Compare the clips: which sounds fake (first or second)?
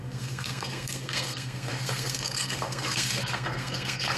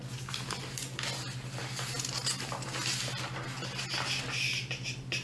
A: first